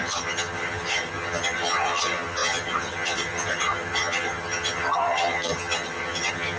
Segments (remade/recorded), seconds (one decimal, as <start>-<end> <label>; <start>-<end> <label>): 0.0-6.6 remade